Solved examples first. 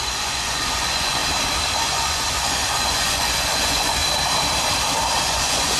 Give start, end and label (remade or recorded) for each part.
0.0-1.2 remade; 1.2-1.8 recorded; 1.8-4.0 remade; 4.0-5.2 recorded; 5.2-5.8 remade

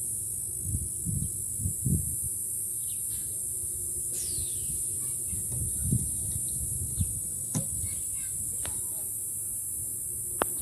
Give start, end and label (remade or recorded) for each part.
0.0-0.7 recorded; 0.7-5.4 remade; 5.4-7.4 recorded; 7.4-9.2 remade; 9.2-10.6 recorded

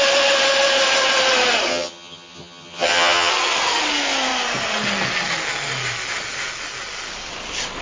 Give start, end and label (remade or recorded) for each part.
0.0-1.7 recorded; 1.7-3.3 remade; 3.3-7.8 recorded

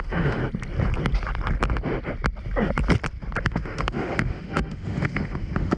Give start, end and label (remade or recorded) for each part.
0.0-0.4 remade; 0.4-3.4 recorded; 3.4-5.8 remade

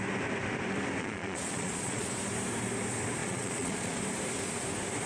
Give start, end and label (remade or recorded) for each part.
0.0-1.0 recorded; 1.0-2.1 remade; 2.1-3.2 recorded; 3.2-4.0 remade; 4.0-5.1 recorded

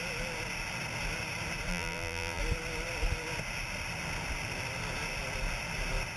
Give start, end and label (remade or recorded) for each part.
0.0-1.7 recorded; 1.7-2.4 remade; 2.4-6.2 recorded